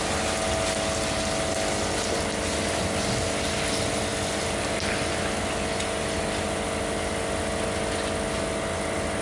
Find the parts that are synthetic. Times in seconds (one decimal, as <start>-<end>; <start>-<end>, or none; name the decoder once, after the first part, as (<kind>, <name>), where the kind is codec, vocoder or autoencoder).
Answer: none